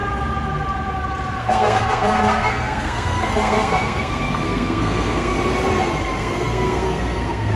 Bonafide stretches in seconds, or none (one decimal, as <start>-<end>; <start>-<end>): 0.0-1.4; 5.3-6.2